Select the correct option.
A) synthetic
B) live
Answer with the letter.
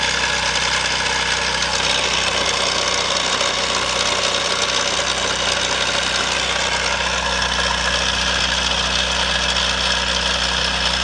B